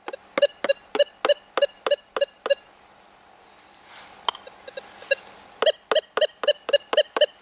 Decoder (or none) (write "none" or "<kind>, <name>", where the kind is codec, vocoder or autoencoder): none